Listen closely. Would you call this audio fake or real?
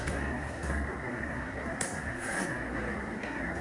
fake